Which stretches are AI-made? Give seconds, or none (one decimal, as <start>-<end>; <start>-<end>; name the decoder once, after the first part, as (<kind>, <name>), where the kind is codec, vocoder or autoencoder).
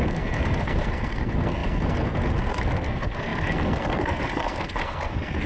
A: 0.0-5.5 (codec, SNAC)